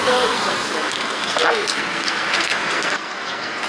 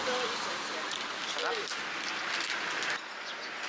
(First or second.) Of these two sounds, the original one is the second